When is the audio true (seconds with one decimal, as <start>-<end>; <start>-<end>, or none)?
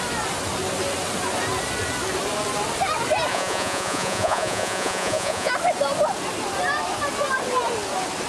0.0-3.3; 5.5-8.3